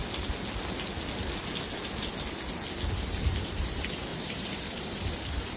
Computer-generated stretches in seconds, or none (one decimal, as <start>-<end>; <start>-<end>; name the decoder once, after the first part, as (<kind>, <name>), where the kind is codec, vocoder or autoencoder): 3.4-5.6 (vocoder, BigVGAN v2)